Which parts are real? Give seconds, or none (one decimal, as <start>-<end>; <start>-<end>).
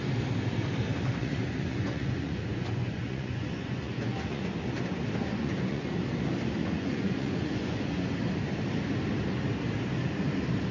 0.0-1.2; 4.5-5.3; 5.9-6.6; 8.1-10.7